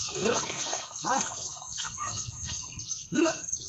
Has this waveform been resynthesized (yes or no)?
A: yes